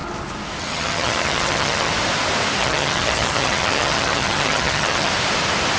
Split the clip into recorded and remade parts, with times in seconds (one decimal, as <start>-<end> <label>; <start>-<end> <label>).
0.0-0.6 recorded; 0.6-1.9 remade; 1.9-2.6 recorded; 2.6-5.1 remade; 5.1-5.8 recorded